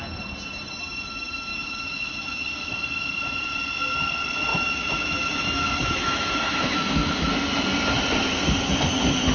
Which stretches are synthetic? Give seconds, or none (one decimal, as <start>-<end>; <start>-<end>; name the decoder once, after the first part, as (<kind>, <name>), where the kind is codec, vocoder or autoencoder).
1.5-2.7 (autoencoder, DAC-VAE); 4.5-7.3